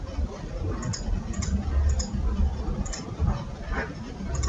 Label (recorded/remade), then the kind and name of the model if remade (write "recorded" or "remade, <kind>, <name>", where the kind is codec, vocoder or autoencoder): recorded